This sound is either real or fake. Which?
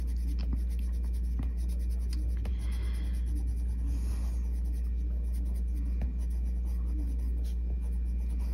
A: real